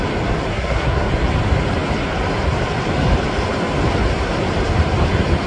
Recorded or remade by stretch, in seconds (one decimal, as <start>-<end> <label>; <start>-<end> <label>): 0.0-0.5 recorded; 0.5-1.1 remade; 1.1-5.5 recorded